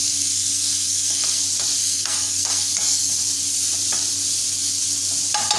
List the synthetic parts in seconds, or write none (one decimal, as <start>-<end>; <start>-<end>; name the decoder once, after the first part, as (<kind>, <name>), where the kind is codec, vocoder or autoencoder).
0.0-1.4 (codec, SNAC); 1.8-3.2